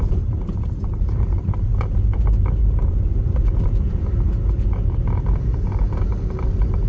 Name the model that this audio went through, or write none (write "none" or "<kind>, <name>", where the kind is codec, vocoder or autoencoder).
vocoder, BigVGAN v2